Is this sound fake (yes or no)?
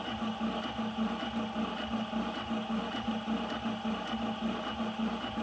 no